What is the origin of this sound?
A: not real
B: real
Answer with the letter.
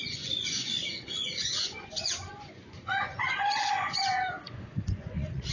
A